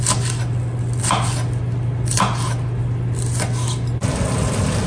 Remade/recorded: recorded